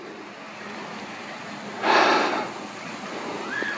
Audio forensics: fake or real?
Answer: real